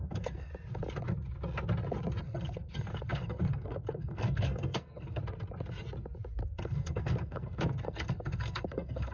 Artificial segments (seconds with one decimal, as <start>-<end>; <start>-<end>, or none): 0.0-0.5; 2.2-5.2; 6.5-9.1